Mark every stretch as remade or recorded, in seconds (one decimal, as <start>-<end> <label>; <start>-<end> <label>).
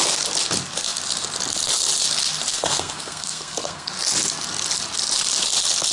0.0-2.5 recorded; 2.5-3.9 remade; 3.9-5.9 recorded